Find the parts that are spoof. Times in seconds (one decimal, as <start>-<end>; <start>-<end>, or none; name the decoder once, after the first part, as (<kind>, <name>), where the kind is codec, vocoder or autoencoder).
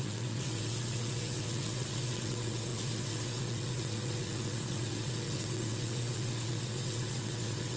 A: 0.0-7.8 (vocoder, WaveNeXt)